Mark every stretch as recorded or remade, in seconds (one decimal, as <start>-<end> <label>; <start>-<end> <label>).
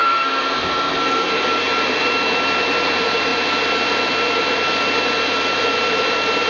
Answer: 0.0-1.3 remade; 1.3-6.5 recorded